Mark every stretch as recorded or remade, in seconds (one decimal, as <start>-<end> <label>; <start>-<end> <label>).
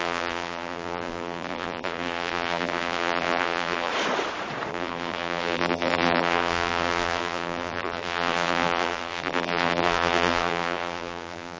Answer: 0.0-3.9 remade; 3.9-4.7 recorded; 4.7-11.6 remade